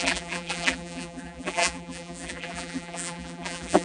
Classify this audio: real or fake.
fake